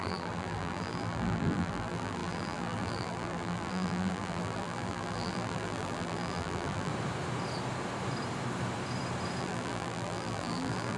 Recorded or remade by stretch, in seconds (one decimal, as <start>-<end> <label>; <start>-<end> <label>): 0.0-6.9 remade; 6.9-9.4 recorded; 9.4-11.0 remade